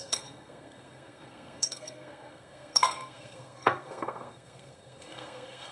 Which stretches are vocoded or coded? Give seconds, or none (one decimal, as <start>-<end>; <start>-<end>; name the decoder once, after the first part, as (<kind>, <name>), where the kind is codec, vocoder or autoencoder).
0.0-5.7 (codec, SNAC)